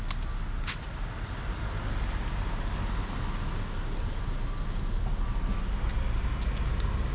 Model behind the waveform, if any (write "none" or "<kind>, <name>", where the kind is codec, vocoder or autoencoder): none